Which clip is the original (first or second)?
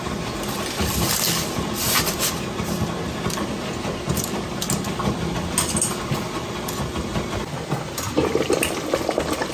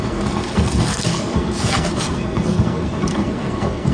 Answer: first